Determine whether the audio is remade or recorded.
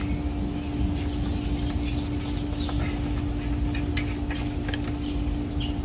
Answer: recorded